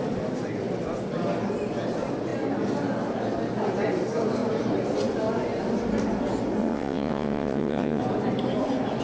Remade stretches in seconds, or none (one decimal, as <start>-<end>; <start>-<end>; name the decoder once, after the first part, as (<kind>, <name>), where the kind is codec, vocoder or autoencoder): 6.6-8.0 (vocoder, WaveNeXt)